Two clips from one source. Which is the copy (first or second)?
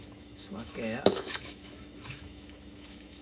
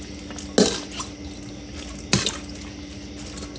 first